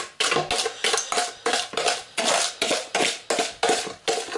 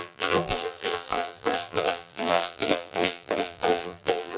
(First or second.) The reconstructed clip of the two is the second